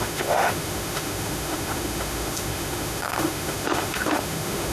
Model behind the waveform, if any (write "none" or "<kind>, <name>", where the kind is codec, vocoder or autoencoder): autoencoder, DAC-VAE